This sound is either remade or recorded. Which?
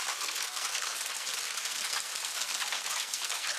remade